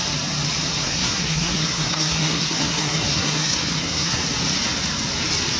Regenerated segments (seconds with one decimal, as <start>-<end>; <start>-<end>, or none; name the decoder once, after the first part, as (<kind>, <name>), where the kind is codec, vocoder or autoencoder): 0.8-4.2 (codec, SNAC)